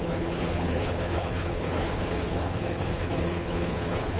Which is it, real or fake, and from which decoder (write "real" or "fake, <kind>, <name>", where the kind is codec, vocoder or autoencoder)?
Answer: fake, codec, HILCodec